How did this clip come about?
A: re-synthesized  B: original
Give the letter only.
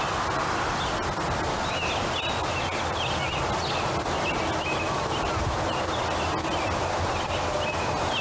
B